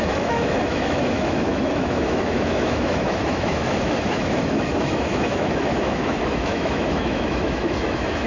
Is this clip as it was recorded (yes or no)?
no